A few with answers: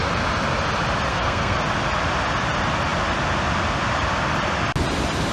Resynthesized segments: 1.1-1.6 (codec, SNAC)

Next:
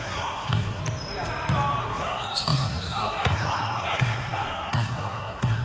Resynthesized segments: 0.0-0.8 (codec, SNAC); 1.8-5.6

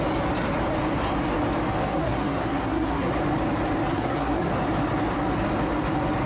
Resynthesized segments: 1.9-3.1 (codec, SNAC); 3.9-4.5